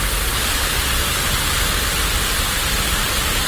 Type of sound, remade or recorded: recorded